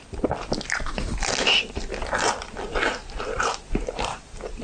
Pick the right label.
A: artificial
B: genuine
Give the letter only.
B